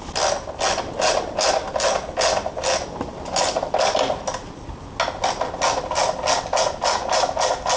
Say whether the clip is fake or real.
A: real